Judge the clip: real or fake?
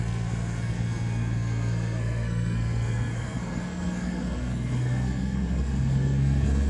fake